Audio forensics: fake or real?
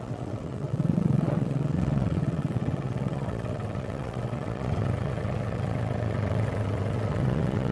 fake